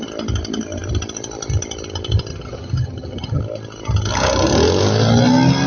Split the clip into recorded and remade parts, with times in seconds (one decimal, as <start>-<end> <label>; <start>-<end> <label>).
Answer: 0.0-2.3 recorded; 2.3-3.4 remade; 3.4-5.7 recorded